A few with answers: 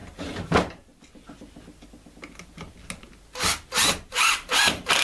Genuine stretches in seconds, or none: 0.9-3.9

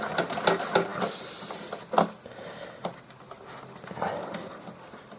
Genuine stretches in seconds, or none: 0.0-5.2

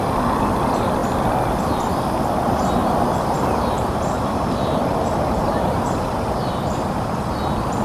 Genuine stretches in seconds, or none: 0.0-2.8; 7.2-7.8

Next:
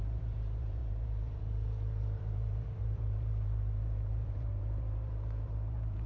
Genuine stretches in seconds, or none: none

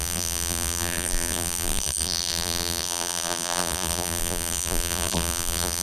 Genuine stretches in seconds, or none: none

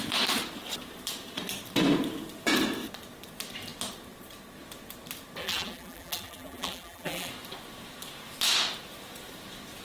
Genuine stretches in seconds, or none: 0.0-5.4; 7.3-9.8